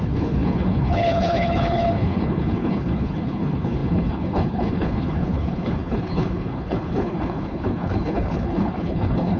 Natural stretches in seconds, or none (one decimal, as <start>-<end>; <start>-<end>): none